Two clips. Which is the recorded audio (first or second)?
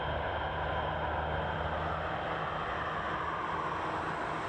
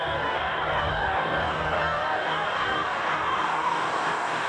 first